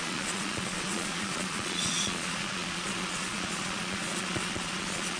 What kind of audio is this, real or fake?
fake